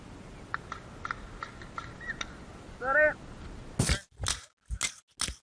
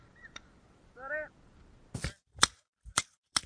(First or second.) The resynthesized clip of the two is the second